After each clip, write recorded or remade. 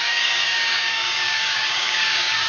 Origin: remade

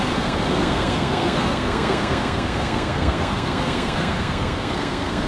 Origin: remade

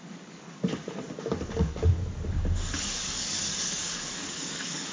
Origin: remade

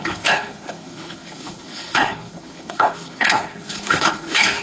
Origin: remade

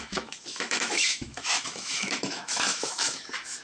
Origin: remade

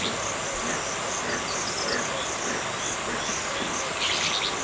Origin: recorded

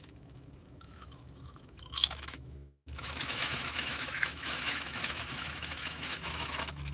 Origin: remade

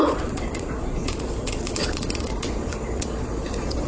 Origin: remade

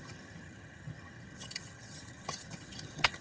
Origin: remade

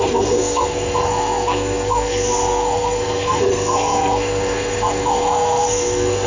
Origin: remade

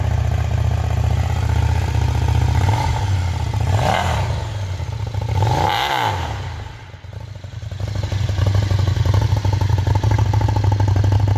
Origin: recorded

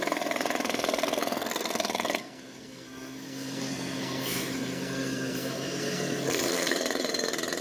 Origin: remade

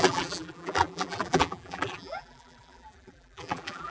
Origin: remade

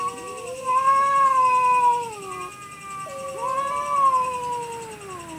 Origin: recorded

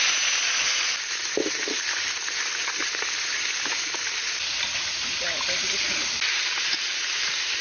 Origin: recorded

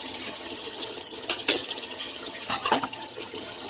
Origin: remade